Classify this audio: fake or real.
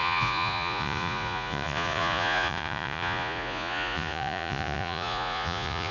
fake